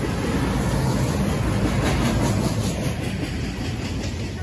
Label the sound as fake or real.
real